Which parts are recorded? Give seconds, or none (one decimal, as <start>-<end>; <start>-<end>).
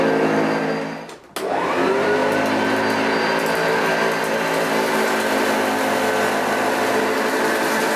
0.0-8.0